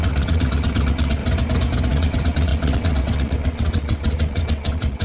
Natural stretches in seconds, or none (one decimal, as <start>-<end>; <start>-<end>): 1.2-1.9